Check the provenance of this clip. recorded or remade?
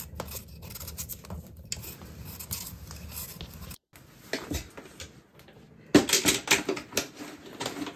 recorded